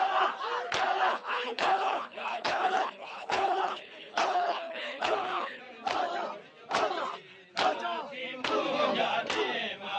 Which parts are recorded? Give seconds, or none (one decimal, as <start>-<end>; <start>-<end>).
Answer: 0.0-1.1; 5.6-10.0